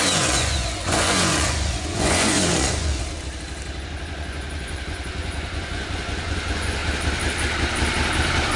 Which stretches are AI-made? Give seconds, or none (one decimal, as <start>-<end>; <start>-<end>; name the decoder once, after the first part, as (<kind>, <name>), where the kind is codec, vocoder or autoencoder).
0.0-2.9 (vocoder, Vocos); 3.8-6.8